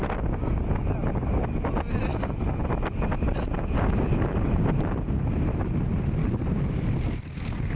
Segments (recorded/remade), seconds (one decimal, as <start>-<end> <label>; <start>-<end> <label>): 0.0-6.2 recorded; 6.2-6.8 remade; 6.8-7.8 recorded